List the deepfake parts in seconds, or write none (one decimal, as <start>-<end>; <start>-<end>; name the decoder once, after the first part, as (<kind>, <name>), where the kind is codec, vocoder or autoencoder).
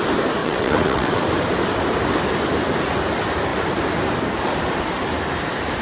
0.4-1.2 (vocoder, WaveNeXt)